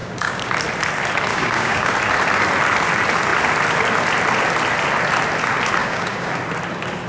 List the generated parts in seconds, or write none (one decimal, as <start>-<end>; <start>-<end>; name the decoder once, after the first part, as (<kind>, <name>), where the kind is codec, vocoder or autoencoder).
0.0-0.5 (codec, DAC); 1.3-1.9; 5.8-6.3